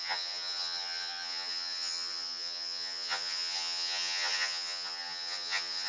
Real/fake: fake